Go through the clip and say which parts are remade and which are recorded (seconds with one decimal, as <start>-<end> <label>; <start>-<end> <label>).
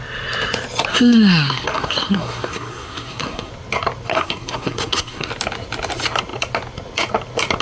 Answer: 0.0-0.9 recorded; 0.9-3.5 remade; 3.5-4.1 recorded; 4.1-5.3 remade; 5.3-7.6 recorded